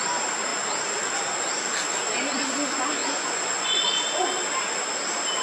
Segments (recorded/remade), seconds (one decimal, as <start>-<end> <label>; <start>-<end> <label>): 0.0-3.0 recorded; 3.0-4.0 remade; 4.0-5.4 recorded